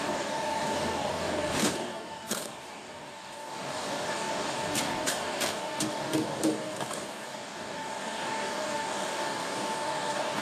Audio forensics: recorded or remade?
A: remade